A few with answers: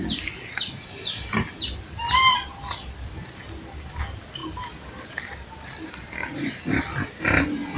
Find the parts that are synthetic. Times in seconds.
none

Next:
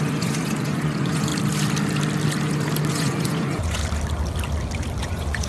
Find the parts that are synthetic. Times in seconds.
0.0-1.3 (vocoder, Vocos); 2.9-3.8; 5.0-5.5

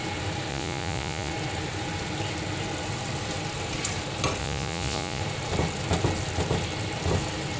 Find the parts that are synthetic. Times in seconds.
0.5-1.3 (vocoder, Vocos); 4.4-5.2

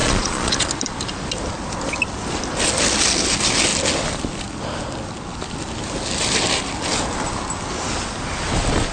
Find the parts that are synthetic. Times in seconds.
0.0-0.7 (vocoder, Vocos)

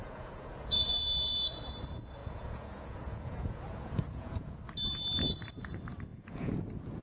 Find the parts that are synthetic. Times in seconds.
0.0-0.9 (vocoder, Vocos); 2.2-4.6; 6.1-7.0